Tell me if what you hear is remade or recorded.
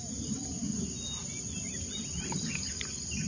recorded